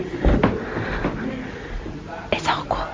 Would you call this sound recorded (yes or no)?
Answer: yes